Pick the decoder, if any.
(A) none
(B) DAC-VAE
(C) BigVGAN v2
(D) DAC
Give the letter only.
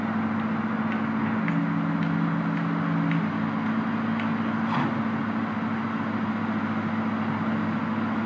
A